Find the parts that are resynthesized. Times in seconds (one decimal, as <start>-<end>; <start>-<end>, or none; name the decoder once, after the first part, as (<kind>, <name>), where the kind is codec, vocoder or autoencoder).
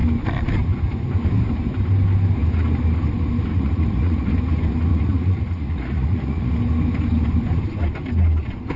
3.5-4.3 (vocoder, Vocos); 4.9-6.5